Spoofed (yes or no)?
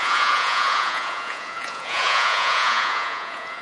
yes